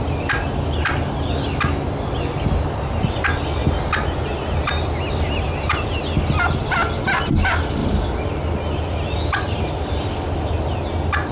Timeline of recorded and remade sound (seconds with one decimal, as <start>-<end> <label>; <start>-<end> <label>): 0.0-11.3 recorded